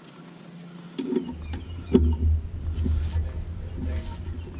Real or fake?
real